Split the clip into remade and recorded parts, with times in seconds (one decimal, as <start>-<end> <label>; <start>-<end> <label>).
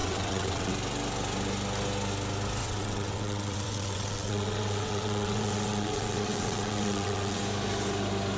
0.0-0.7 remade; 0.7-2.6 recorded; 2.6-7.4 remade; 7.4-8.4 recorded